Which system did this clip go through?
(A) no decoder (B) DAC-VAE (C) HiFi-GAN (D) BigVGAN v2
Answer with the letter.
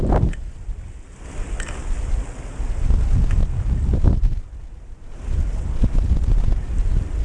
A